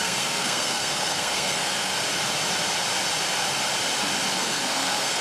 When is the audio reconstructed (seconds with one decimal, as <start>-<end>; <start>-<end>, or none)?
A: 0.0-1.9; 4.3-5.2